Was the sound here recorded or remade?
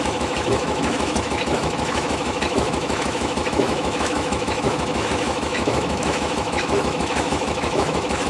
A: remade